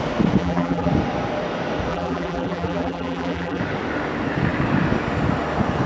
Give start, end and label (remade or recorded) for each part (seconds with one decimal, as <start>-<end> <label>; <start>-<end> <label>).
0.0-0.4 recorded; 0.4-0.9 remade; 0.9-1.9 recorded; 1.9-3.6 remade; 3.6-5.9 recorded